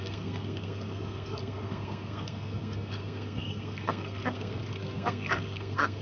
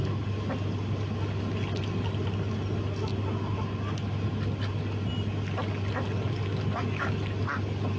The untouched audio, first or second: second